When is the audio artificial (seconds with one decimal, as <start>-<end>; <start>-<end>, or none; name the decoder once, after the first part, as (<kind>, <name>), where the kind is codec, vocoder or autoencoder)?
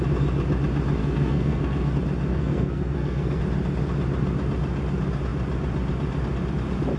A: 1.0-1.9 (codec, SNAC); 2.3-3.4